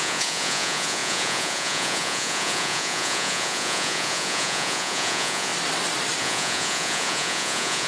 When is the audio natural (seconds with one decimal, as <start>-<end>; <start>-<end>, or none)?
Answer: 5.5-6.2